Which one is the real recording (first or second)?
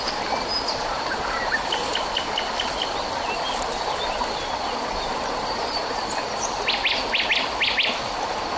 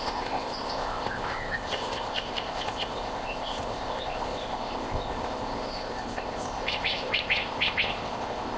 first